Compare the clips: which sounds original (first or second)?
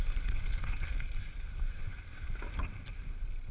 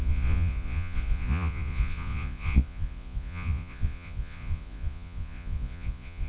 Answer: first